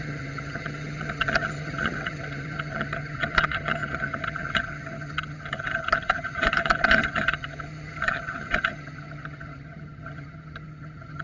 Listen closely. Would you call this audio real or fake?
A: fake